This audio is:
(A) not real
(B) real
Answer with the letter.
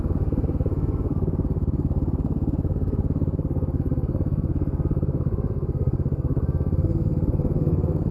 A